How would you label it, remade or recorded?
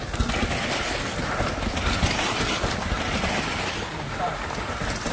recorded